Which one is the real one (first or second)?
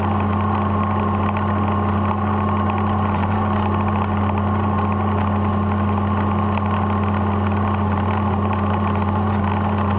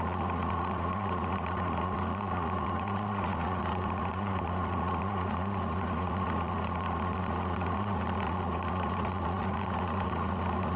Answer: first